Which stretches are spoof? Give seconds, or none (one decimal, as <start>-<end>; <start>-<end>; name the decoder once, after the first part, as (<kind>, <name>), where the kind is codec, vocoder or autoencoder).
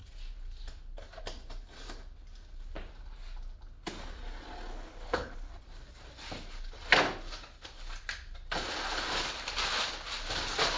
4.7-5.5 (codec, HILCodec)